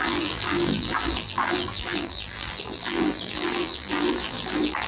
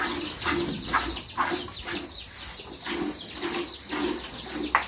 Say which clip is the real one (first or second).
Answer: second